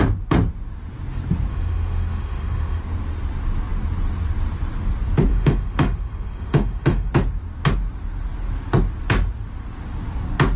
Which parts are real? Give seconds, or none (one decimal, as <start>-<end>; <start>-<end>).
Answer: 0.0-1.5; 2.8-5.3; 7.1-10.6